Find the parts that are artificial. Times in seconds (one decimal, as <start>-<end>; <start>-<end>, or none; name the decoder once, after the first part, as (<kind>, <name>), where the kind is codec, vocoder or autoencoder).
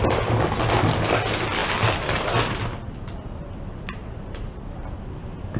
none